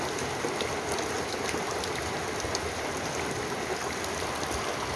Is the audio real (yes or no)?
yes